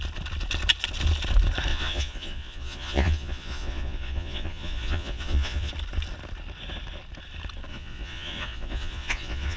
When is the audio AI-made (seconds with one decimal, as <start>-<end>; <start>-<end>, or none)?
1.7-5.7; 7.7-9.6